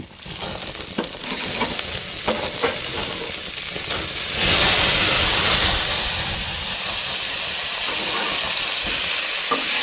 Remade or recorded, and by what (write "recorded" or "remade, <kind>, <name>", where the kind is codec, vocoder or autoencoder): recorded